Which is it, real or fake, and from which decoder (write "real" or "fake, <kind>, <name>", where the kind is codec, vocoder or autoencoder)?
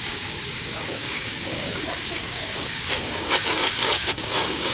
fake, codec, DAC